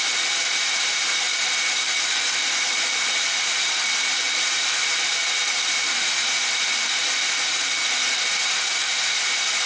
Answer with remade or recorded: recorded